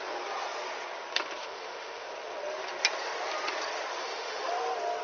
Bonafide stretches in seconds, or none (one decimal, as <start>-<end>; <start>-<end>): 0.0-1.4; 2.1-4.0; 4.5-5.0